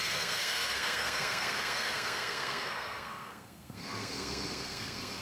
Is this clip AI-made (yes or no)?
yes